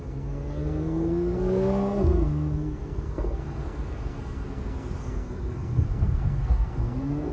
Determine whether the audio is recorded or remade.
remade